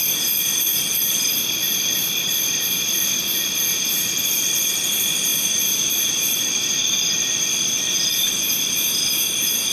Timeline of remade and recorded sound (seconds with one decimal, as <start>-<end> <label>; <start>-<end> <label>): 0.0-5.3 remade; 5.3-5.9 recorded; 5.9-9.7 remade

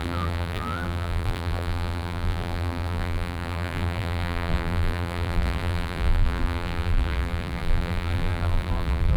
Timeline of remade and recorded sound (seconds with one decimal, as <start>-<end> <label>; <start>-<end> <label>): 0.0-9.2 remade